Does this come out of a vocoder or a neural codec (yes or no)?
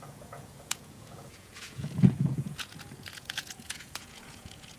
yes